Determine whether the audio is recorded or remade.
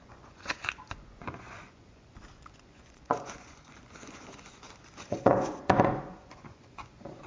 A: remade